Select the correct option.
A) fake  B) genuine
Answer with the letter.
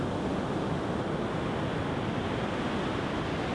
B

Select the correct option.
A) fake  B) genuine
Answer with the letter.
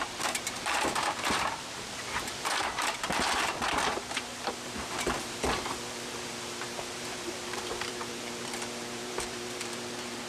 A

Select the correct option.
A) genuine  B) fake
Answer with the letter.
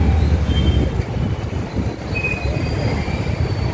B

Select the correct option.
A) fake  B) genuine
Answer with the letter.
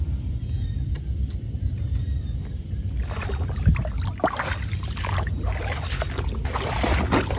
B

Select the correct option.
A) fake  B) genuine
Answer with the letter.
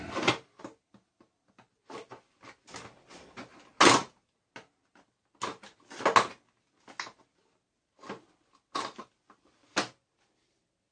B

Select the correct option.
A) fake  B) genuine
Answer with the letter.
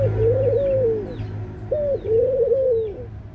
B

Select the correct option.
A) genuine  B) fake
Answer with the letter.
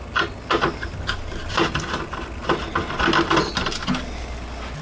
A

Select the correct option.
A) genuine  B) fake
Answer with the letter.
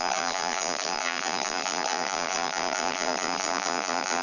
B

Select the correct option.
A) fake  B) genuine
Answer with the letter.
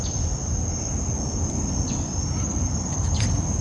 B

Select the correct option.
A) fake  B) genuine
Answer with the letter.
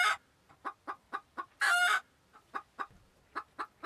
B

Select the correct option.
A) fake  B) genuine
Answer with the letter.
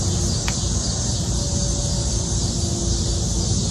B